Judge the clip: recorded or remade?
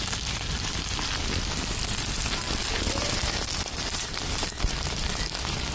remade